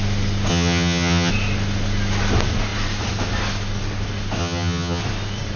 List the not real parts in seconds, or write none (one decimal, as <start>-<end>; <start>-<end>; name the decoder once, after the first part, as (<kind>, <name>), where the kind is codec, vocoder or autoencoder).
0.5-1.3 (vocoder, HiFi-GAN); 4.4-5.0